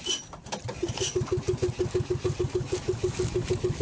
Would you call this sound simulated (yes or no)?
no